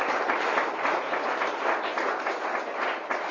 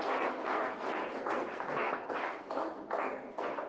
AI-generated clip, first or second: second